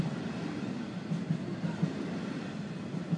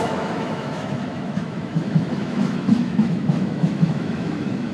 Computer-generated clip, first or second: second